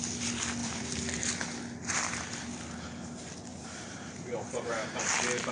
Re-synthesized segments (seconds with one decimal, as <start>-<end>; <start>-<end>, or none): 0.6-1.2; 3.5-5.0